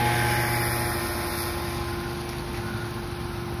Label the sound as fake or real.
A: real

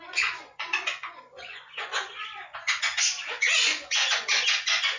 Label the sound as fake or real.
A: fake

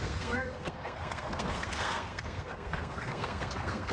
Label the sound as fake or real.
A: fake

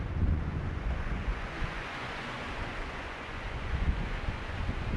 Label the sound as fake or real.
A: fake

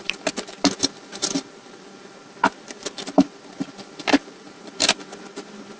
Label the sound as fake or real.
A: fake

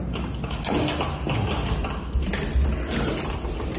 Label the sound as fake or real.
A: real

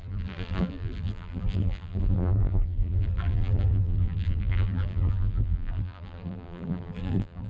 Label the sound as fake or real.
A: fake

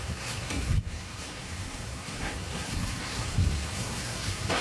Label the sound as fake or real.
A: fake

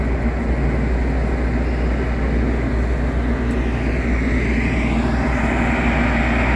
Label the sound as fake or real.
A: real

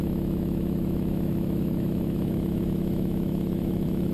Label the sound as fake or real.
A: fake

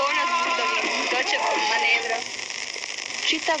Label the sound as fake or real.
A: fake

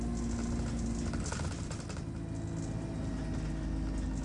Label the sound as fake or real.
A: real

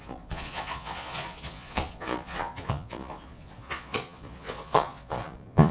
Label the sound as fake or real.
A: fake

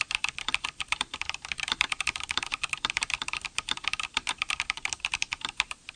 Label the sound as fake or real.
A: fake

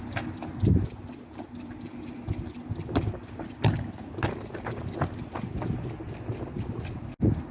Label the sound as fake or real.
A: real